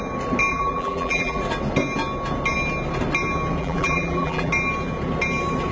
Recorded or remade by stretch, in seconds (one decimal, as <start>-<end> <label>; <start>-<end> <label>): 0.0-0.5 recorded; 0.5-1.4 remade; 1.4-3.6 recorded; 3.6-4.5 remade; 4.5-5.7 recorded